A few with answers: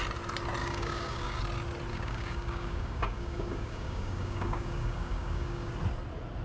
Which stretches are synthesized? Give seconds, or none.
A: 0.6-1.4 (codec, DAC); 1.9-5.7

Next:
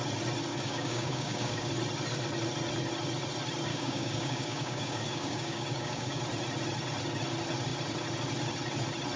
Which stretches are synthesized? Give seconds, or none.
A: 0.5-1.7 (codec, DAC); 3.7-6.2